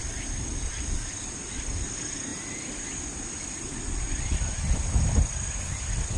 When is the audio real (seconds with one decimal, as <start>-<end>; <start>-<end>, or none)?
0.0-6.2

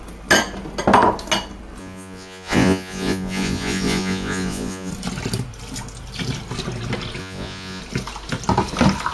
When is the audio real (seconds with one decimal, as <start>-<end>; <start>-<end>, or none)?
0.0-1.8; 4.9-7.2; 7.8-9.1

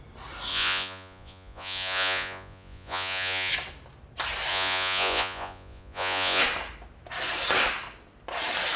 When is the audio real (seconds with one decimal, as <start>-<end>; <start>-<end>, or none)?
0.0-0.5; 3.5-4.5; 6.4-8.8

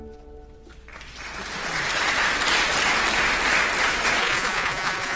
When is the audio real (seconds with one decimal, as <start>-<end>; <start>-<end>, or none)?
0.0-4.2

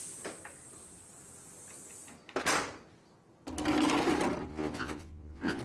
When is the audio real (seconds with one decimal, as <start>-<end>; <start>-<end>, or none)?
0.0-4.5

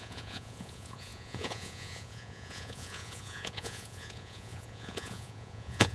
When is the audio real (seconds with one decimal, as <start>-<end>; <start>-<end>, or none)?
none

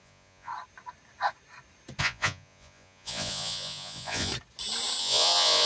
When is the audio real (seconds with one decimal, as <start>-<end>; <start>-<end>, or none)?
0.5-2.0; 4.3-5.0